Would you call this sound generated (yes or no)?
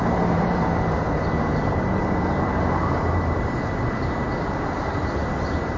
yes